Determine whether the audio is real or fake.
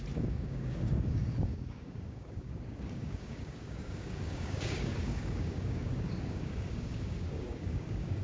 fake